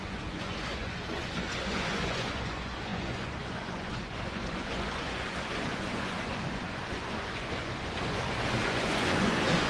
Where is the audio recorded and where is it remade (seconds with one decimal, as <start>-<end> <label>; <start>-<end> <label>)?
0.0-9.7 remade